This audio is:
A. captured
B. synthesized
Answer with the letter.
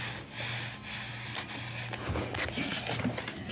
A